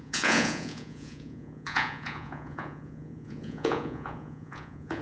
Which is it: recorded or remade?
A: remade